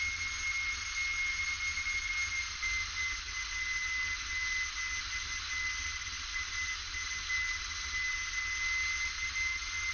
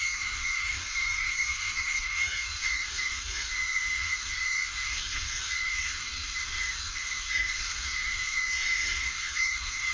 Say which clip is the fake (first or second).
second